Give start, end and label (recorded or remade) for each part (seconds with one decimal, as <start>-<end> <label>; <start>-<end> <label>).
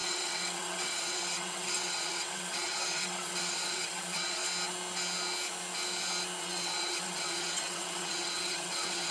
0.0-4.4 remade; 4.4-6.4 recorded; 6.4-9.1 remade